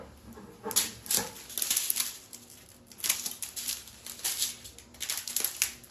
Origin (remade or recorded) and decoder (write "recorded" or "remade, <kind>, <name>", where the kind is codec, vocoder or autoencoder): recorded